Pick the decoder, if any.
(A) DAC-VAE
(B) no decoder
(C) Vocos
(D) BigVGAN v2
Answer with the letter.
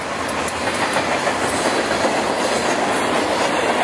B